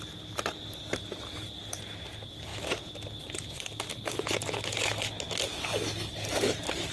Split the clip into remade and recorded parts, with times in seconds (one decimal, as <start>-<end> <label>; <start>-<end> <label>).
0.0-6.9 recorded